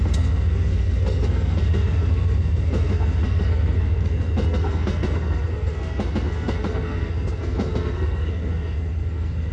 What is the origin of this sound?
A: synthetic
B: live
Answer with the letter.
A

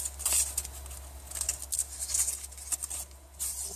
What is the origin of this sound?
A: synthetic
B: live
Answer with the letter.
B